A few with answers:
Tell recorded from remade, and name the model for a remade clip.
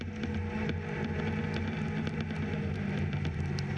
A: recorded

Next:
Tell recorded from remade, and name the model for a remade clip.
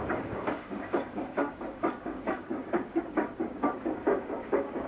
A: remade, codec, DAC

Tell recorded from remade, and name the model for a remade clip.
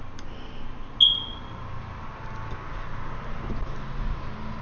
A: recorded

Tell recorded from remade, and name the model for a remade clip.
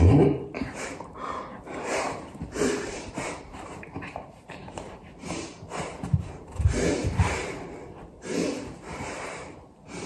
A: remade, vocoder, BigVGAN v2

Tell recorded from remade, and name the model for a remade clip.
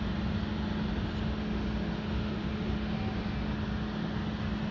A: recorded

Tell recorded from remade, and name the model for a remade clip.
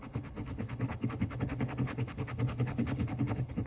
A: remade, codec, HILCodec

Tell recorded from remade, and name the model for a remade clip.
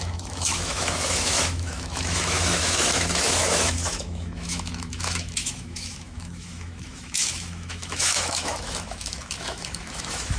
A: remade, autoencoder, DAC-VAE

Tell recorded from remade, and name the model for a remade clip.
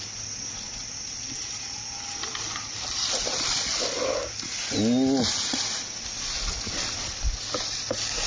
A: recorded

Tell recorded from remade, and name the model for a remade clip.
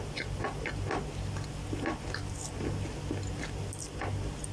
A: recorded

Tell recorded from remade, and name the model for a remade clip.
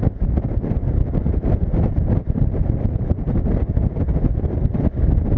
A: recorded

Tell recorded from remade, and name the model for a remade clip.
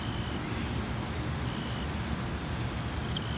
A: recorded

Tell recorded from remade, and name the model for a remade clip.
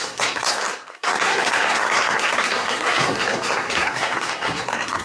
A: remade, codec, SNAC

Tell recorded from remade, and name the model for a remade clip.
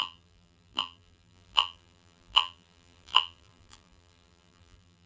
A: remade, vocoder, BigVGAN v2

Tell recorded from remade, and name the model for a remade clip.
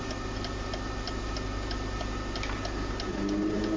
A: recorded